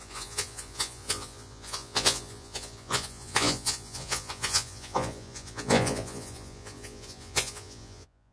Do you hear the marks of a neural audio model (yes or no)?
yes